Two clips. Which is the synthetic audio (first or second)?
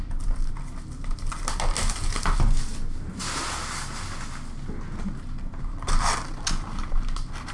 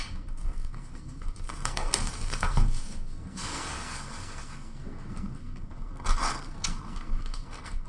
second